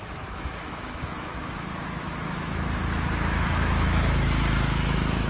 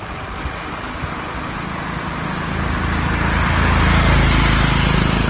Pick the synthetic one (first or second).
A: first